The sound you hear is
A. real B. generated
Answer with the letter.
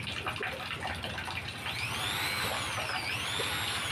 A